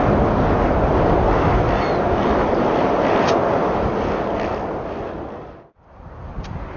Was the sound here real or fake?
real